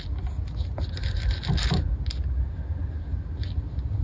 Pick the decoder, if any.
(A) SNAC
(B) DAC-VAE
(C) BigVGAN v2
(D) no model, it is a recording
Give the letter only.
D